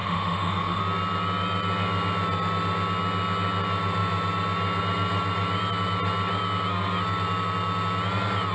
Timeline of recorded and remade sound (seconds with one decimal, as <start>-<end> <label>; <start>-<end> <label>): 0.0-0.8 remade; 0.8-8.5 recorded